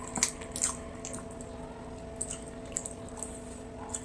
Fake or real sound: real